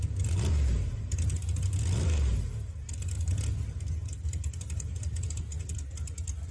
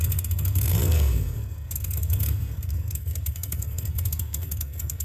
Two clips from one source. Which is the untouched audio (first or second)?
first